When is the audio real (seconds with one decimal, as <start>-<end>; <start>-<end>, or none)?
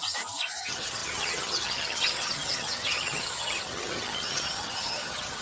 0.0-0.6